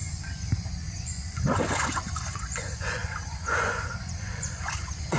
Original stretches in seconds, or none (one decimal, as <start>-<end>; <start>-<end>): none